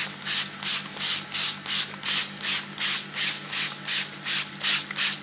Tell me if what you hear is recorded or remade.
recorded